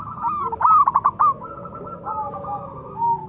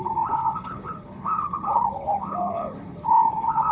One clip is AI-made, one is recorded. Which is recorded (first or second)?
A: first